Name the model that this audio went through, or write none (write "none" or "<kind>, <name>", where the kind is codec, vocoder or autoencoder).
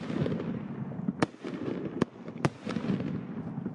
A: none